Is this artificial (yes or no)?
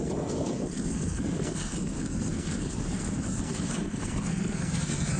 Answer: yes